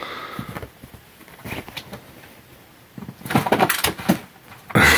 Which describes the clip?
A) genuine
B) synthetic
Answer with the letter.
A